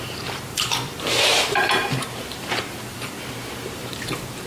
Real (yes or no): no